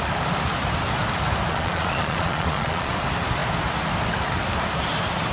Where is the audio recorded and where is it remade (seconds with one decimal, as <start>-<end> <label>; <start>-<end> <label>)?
0.0-1.5 recorded; 1.5-2.9 remade; 2.9-5.3 recorded